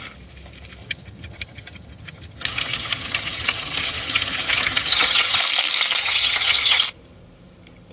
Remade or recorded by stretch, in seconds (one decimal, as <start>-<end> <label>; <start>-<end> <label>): 0.0-0.8 recorded; 0.8-5.4 remade; 5.4-6.0 recorded; 6.0-6.8 remade; 6.8-7.9 recorded